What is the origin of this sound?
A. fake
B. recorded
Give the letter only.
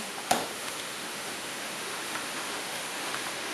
A